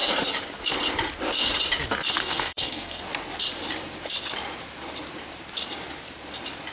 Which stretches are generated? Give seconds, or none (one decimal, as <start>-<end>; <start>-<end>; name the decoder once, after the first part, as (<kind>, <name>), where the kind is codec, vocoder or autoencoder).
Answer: 2.2-3.0 (codec, SNAC)